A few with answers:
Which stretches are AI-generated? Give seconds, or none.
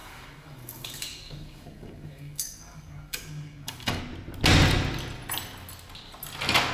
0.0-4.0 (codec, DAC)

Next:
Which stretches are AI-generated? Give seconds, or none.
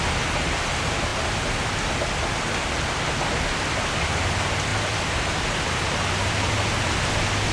none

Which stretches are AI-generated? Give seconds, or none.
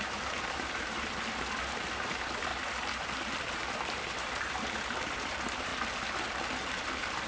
0.0-2.5 (vocoder, BigVGAN v2); 3.3-5.7; 6.8-7.3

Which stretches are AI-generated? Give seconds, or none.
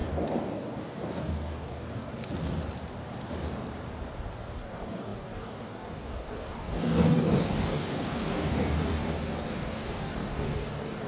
0.0-2.1 (codec, DAC); 4.5-11.1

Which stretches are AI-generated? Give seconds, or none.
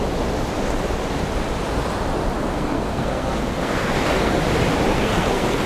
2.5-4.4 (codec, SNAC); 4.9-5.7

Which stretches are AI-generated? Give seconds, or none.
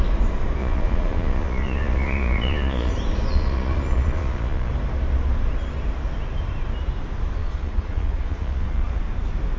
0.6-2.9 (vocoder, Vocos); 3.3-4.7; 7.4-9.0